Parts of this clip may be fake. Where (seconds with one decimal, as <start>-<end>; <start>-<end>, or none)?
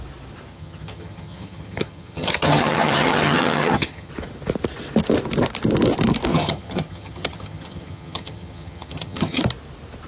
0.5-4.1; 6.3-9.4